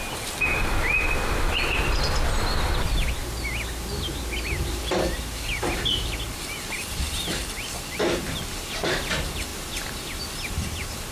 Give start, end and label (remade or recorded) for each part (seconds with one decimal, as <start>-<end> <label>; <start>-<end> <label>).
0.0-11.1 recorded